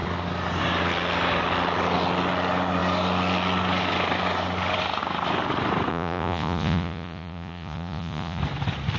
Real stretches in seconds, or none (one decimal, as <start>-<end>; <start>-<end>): 0.0-5.9; 8.4-9.0